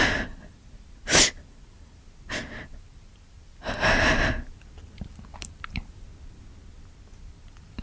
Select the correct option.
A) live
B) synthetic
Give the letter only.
A